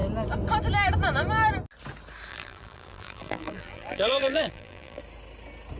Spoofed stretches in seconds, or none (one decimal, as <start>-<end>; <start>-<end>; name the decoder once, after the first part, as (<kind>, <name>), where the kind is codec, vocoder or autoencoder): 2.3-5.0 (vocoder, BigVGAN v2)